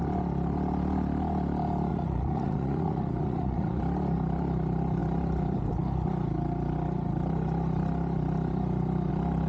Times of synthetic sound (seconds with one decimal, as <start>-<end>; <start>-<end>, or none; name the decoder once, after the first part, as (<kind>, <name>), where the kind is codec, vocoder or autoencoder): 1.9-3.8 (vocoder, Vocos)